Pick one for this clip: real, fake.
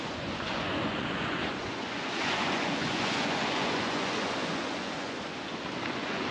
fake